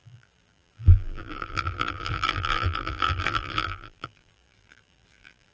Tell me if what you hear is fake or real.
fake